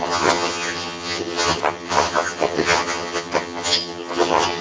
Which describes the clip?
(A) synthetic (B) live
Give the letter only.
A